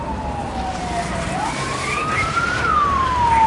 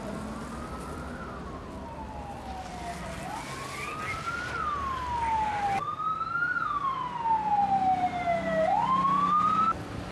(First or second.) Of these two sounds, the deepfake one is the first